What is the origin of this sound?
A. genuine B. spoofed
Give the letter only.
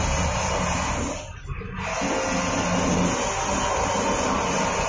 A